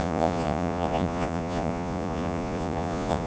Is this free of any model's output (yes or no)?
no